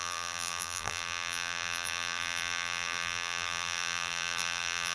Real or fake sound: fake